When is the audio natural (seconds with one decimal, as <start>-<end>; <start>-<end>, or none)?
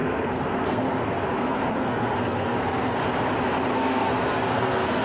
3.0-3.7